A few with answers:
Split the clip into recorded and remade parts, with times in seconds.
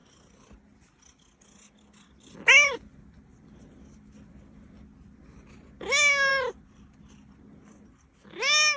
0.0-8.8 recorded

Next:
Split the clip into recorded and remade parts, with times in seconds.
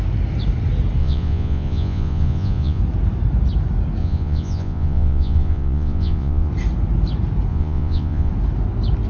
0.0-1.0 recorded; 1.0-2.8 remade; 2.8-4.0 recorded; 4.0-6.5 remade; 6.5-7.5 recorded; 7.5-8.3 remade; 8.3-9.1 recorded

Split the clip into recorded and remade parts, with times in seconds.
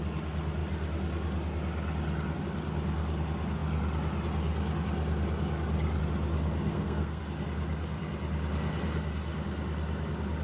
0.0-6.7 recorded; 6.7-7.2 remade; 7.2-10.4 recorded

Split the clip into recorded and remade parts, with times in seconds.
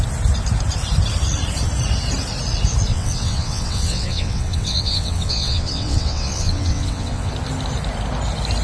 0.0-2.9 recorded; 2.9-7.3 remade; 7.3-8.6 recorded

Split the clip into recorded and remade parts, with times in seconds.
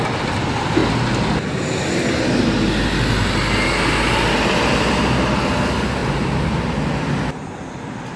0.0-6.0 recorded; 6.0-6.6 remade; 6.6-8.2 recorded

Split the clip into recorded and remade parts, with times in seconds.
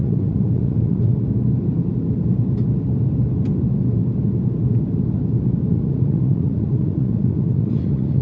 0.0-1.1 remade; 1.1-5.7 recorded; 5.7-8.2 remade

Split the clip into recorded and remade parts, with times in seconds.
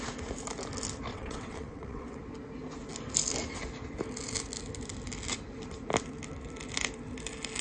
0.0-1.1 recorded; 1.1-2.2 remade; 2.2-7.6 recorded